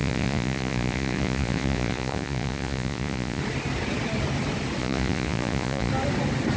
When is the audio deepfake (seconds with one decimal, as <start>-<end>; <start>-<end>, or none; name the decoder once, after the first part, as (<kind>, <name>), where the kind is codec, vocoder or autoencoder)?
0.0-3.4 (vocoder, Vocos); 4.8-5.9